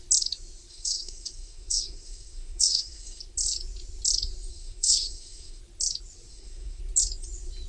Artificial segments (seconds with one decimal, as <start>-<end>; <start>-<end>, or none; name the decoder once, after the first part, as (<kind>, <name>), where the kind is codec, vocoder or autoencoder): 0.7-3.2 (codec, SNAC); 4.5-5.6; 6.3-6.8